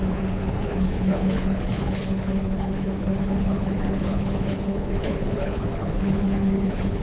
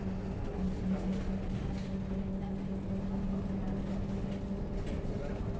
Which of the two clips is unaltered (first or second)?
second